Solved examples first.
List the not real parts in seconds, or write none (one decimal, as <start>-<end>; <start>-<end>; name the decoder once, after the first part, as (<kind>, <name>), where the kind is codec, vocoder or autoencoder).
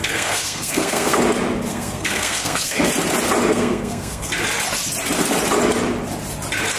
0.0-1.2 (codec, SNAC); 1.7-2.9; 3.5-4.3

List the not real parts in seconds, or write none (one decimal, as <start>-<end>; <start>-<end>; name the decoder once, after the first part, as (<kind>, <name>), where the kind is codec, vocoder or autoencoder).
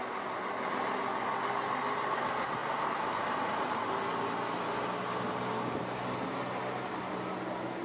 none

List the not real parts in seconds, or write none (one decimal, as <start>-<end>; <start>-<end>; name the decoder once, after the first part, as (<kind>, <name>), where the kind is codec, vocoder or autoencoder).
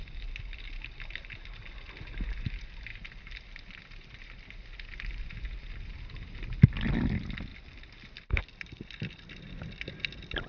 none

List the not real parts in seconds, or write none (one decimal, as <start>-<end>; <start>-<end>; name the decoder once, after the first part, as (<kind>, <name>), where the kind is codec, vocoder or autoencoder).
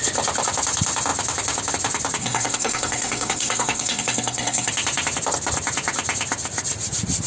2.2-4.7 (codec, SNAC)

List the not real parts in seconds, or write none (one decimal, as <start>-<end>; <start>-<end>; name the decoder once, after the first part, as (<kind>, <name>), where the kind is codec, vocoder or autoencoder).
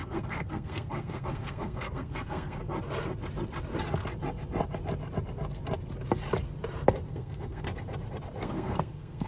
0.0-2.6 (codec, SNAC); 7.1-7.7; 8.4-9.3